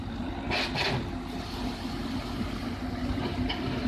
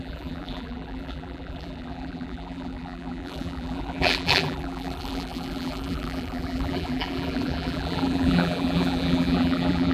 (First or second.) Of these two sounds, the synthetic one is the second